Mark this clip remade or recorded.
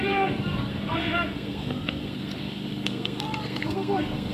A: remade